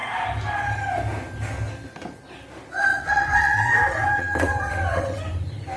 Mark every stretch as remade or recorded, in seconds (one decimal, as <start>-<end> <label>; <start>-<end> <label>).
0.0-2.9 recorded; 2.9-5.2 remade; 5.2-5.8 recorded